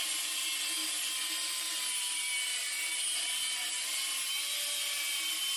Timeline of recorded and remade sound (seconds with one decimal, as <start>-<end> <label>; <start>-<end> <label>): 0.0-0.8 recorded; 0.8-4.2 remade; 4.2-5.6 recorded